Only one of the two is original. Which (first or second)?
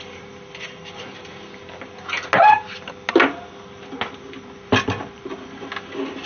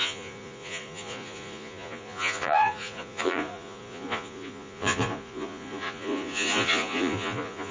first